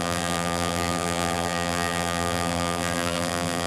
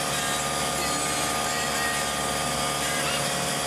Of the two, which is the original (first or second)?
second